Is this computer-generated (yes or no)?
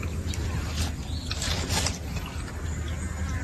no